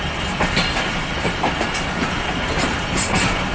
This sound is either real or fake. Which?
real